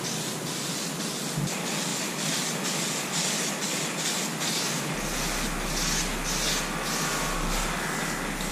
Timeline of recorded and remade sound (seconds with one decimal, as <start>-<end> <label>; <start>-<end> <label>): 0.0-1.9 recorded; 1.9-3.8 remade; 3.8-8.5 recorded